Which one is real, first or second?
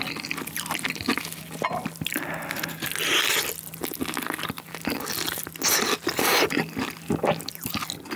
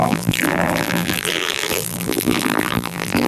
first